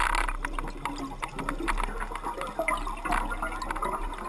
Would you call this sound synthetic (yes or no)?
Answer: no